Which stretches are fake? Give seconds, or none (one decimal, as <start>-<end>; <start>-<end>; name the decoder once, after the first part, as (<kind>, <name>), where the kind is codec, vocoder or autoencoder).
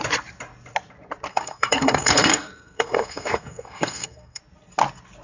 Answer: 1.3-4.4 (codec, SNAC)